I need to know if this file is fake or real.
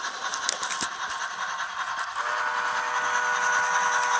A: real